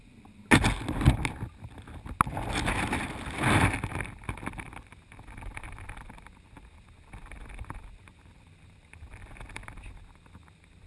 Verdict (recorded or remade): recorded